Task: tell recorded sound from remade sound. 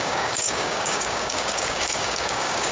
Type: remade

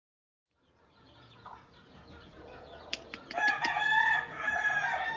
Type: remade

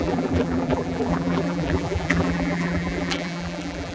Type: remade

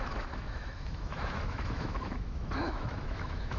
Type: remade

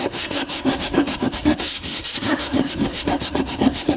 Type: remade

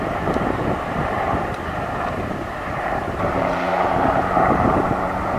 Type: remade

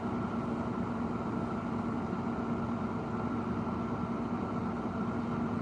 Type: recorded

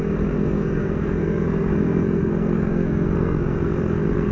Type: remade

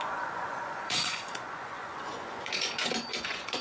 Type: remade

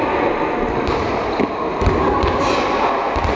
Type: recorded